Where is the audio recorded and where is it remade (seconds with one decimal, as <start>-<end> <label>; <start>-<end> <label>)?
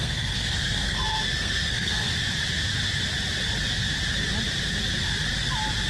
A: 0.0-2.1 remade; 2.1-5.9 recorded